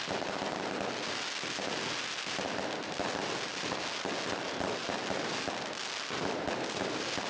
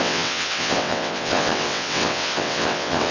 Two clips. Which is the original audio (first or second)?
first